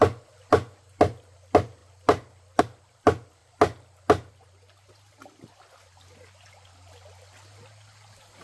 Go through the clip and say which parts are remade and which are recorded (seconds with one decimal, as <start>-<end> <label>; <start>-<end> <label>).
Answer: 0.0-8.4 recorded